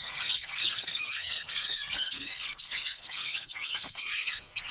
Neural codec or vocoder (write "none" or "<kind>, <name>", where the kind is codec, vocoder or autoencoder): codec, SNAC